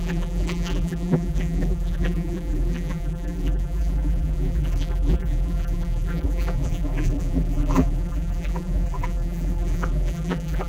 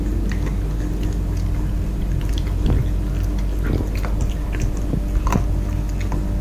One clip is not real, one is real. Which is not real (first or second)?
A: first